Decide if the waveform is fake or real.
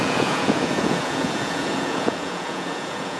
fake